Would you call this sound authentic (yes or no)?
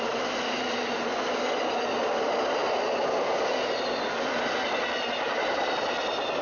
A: yes